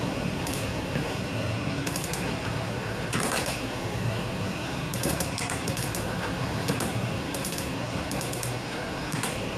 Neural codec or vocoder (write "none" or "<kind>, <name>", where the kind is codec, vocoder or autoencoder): codec, SNAC